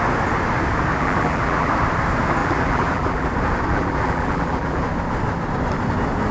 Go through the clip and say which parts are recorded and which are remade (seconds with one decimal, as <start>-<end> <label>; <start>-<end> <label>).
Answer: 0.0-0.9 recorded; 0.9-1.7 remade; 1.7-2.4 recorded; 2.4-3.3 remade; 3.3-3.7 recorded; 3.7-4.8 remade; 4.8-6.3 recorded